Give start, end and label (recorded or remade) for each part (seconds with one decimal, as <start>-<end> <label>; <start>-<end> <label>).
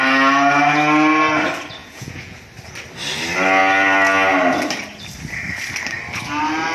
0.0-1.8 recorded; 1.8-2.4 remade; 2.4-6.7 recorded